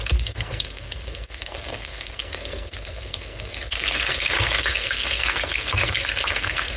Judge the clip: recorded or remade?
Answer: remade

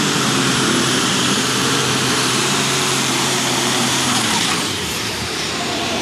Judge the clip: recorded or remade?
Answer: remade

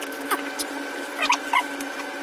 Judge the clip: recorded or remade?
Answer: recorded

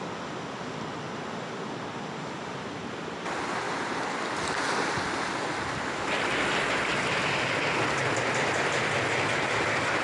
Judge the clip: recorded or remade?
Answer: recorded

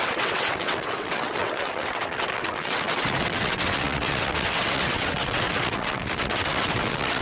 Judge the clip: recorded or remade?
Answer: remade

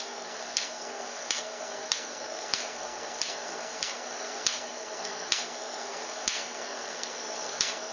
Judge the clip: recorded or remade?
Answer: remade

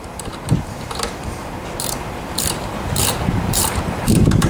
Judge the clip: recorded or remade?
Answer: remade